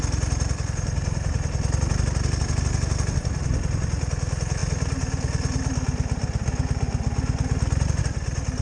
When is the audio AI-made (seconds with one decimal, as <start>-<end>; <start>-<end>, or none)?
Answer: none